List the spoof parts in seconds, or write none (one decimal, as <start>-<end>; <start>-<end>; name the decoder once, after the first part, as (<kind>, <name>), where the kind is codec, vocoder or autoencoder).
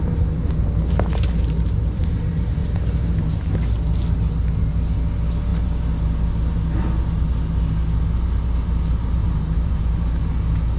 2.6-3.5 (vocoder, BigVGAN v2); 9.2-9.8